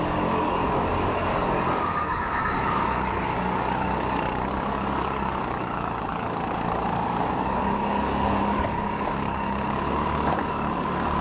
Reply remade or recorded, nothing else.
remade